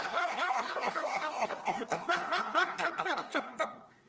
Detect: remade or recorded remade